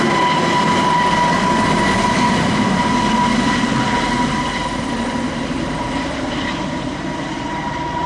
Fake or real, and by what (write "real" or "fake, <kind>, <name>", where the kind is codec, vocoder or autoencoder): fake, vocoder, BigVGAN v2